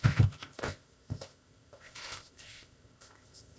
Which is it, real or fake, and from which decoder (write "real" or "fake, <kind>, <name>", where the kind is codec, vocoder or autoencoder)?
fake, codec, ZipCodec